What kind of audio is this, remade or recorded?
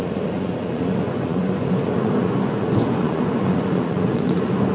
remade